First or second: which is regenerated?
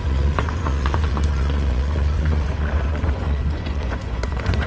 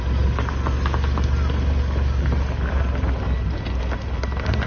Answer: first